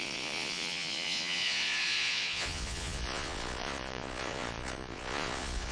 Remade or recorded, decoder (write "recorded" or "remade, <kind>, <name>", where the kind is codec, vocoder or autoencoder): remade, vocoder, Vocos